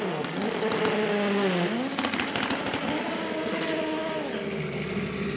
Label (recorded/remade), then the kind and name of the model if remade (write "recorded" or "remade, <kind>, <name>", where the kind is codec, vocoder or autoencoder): recorded